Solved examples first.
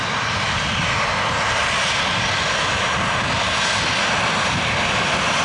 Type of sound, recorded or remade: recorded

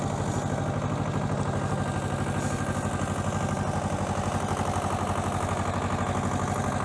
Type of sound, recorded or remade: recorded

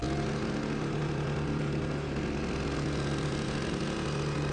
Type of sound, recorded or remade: recorded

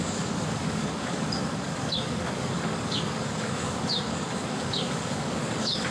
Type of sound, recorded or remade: remade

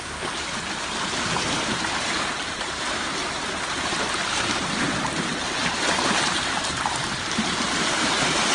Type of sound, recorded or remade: remade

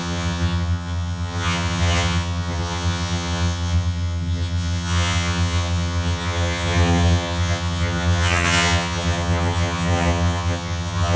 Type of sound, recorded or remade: remade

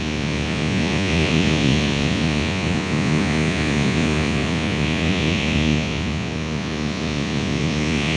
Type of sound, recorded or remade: remade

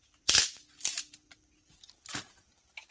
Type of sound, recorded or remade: recorded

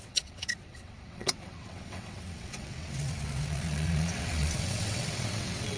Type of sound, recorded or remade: remade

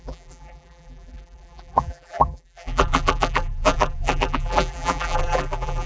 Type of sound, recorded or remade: remade